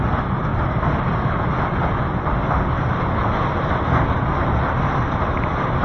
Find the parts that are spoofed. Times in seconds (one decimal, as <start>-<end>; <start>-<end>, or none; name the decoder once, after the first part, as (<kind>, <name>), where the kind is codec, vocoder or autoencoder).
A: none

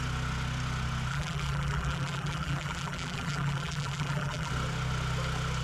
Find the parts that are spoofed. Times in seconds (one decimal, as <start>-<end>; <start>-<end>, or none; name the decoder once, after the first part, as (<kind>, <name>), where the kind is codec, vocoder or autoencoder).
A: 1.1-4.5 (vocoder, BigVGAN v2)

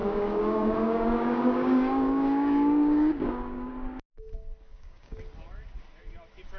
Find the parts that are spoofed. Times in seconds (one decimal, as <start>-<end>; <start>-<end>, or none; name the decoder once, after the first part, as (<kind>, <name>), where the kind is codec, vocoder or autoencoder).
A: 0.0-3.7 (codec, DAC); 4.7-5.2

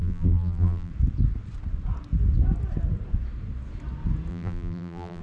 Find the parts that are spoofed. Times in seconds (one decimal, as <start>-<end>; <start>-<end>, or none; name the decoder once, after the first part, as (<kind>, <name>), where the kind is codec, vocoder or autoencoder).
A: 0.0-0.9 (vocoder, BigVGAN v2); 4.3-5.2

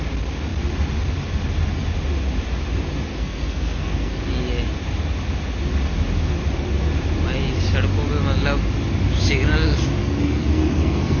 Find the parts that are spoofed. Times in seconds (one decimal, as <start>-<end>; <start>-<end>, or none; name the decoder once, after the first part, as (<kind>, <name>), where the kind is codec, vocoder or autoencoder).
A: 3.1-4.2 (codec, SNAC); 10.0-11.2

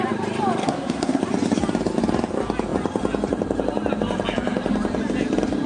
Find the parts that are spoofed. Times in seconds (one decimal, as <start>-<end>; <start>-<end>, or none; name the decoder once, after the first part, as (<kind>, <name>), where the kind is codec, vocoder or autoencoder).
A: 0.6-1.2 (codec, SNAC)

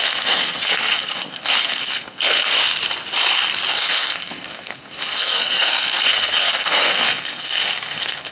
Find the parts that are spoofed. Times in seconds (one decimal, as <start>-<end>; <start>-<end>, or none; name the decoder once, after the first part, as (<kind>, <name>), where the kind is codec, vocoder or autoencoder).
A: 0.0-2.5 (codec, SNAC); 3.7-8.3